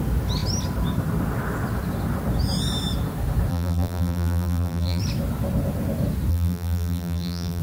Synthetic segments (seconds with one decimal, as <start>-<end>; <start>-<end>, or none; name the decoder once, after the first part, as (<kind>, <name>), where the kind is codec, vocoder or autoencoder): 3.5-5.0 (vocoder, BigVGAN v2); 6.3-7.6